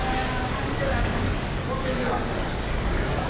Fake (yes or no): yes